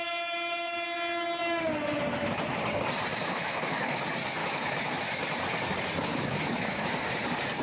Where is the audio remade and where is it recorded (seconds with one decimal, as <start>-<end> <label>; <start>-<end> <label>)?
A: 0.0-3.1 recorded; 3.1-4.0 remade; 4.0-4.4 recorded; 4.4-5.2 remade; 5.2-6.1 recorded; 6.1-7.0 remade; 7.0-7.6 recorded